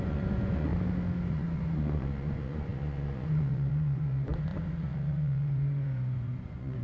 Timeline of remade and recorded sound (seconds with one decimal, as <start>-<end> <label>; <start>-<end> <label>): 0.0-0.7 remade; 0.7-1.3 recorded; 1.3-6.8 remade